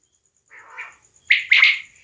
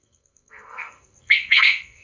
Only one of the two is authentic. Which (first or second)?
first